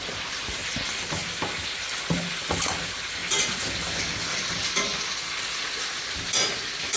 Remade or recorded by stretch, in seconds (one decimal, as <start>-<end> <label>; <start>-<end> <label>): 0.0-7.0 recorded